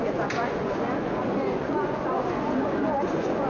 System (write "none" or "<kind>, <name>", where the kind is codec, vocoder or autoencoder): vocoder, Vocos